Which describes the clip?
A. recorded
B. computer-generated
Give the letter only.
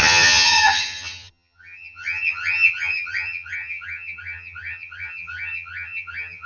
B